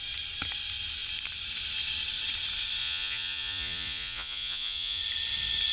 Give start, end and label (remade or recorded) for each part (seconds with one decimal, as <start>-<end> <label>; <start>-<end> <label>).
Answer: 0.0-2.8 recorded; 2.8-5.0 remade; 5.0-5.7 recorded